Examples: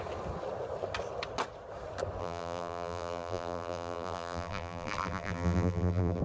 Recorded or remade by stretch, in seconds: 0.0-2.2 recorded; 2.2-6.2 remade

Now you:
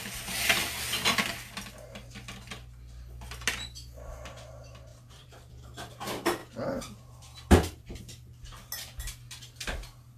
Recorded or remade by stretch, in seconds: 0.0-4.9 recorded; 4.9-5.9 remade; 5.9-6.4 recorded; 6.4-8.0 remade; 8.0-10.2 recorded

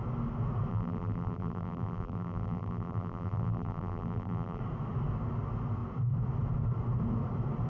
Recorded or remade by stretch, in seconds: 0.0-0.7 recorded; 0.7-4.6 remade; 4.6-7.7 recorded

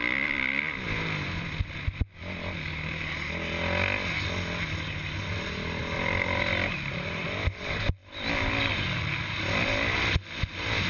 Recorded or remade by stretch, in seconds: 0.0-5.8 recorded; 5.8-7.2 remade; 7.2-8.0 recorded; 8.0-9.0 remade; 9.0-10.9 recorded

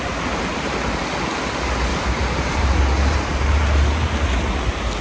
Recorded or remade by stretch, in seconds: 0.0-0.5 recorded; 0.5-1.0 remade; 1.0-1.9 recorded; 1.9-2.6 remade; 2.6-3.0 recorded; 3.0-3.6 remade; 3.6-5.0 recorded